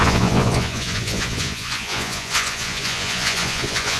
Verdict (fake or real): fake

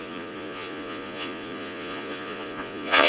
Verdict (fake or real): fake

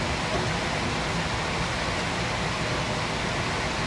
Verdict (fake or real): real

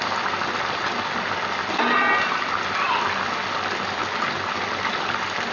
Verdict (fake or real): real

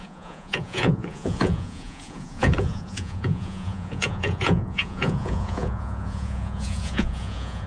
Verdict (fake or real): fake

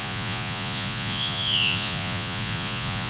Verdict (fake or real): fake